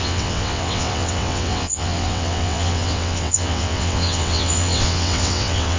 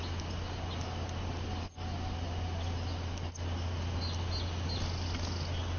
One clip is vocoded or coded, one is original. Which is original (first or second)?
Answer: second